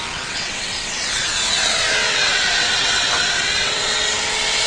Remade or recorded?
remade